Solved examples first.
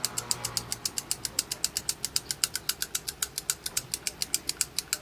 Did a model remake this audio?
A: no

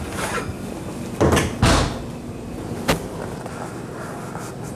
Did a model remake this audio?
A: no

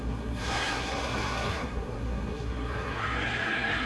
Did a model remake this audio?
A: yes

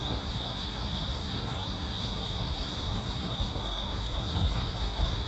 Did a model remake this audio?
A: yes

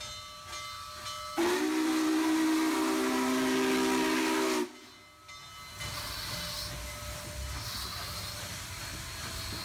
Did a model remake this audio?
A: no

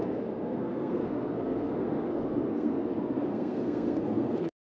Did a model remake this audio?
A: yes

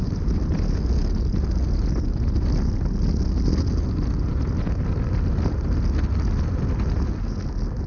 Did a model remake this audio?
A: no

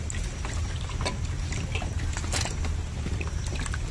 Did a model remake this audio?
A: no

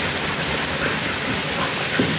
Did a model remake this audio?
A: no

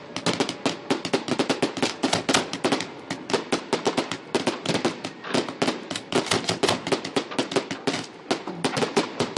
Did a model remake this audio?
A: no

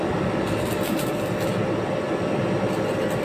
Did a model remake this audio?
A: no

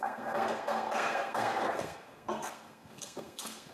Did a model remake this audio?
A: yes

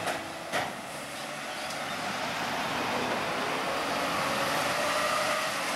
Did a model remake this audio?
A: no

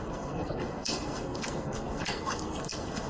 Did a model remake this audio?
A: yes